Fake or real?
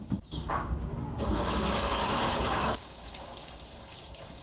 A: fake